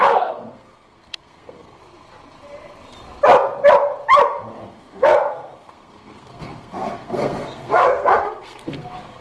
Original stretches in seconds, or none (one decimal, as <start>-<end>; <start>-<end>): 1.8-4.6